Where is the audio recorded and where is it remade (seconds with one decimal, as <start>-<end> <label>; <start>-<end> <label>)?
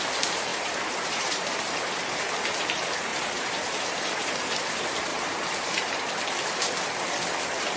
0.0-0.5 recorded; 0.5-1.9 remade; 1.9-3.1 recorded; 3.1-4.3 remade; 4.3-5.1 recorded; 5.1-6.1 remade; 6.1-7.8 recorded